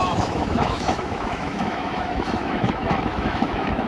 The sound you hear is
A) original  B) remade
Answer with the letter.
B